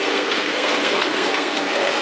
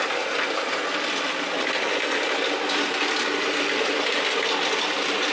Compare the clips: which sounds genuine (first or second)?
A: second